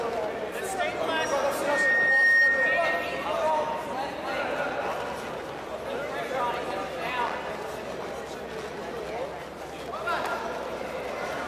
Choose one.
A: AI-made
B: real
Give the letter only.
B